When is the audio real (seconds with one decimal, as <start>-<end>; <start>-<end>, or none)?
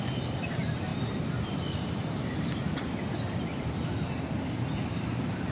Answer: 0.0-0.9; 3.1-5.5